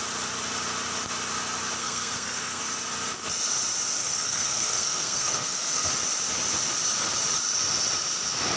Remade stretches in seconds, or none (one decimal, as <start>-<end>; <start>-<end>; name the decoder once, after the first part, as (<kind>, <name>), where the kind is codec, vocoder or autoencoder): 1.8-2.6 (codec, SNAC); 4.0-5.9